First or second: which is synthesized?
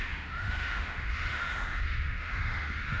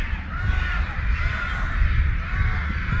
first